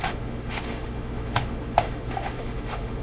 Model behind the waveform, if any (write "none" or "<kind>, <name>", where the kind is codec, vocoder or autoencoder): autoencoder, DAC-VAE